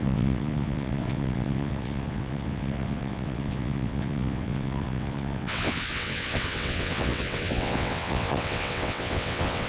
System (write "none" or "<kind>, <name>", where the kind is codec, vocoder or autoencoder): vocoder, WaveNeXt